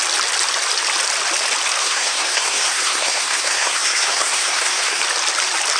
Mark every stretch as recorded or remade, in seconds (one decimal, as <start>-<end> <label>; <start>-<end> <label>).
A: 0.0-1.8 recorded; 1.8-5.0 remade; 5.0-5.8 recorded

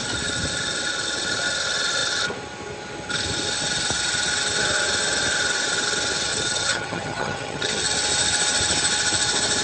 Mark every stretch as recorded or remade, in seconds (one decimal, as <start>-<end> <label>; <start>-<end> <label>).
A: 0.0-6.3 recorded; 6.3-7.9 remade; 7.9-9.6 recorded

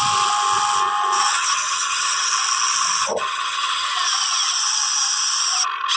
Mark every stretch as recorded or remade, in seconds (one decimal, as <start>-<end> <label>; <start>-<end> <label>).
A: 0.0-1.2 recorded; 1.2-2.3 remade; 2.3-3.0 recorded; 3.0-3.9 remade; 3.9-6.0 recorded

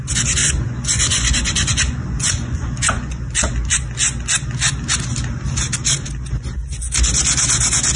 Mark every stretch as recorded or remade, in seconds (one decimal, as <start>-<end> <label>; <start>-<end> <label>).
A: 0.0-0.4 recorded; 0.4-3.2 remade; 3.2-8.0 recorded

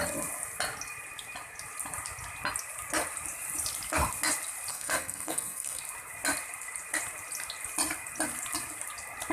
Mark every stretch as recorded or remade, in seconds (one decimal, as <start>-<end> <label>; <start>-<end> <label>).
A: 0.0-4.7 recorded; 4.7-5.8 remade; 5.8-9.3 recorded

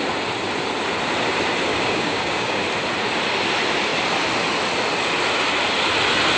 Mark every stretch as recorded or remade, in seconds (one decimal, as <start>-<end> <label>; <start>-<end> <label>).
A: 0.0-1.7 recorded; 1.7-2.6 remade; 2.6-6.4 recorded